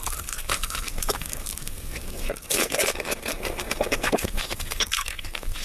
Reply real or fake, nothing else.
fake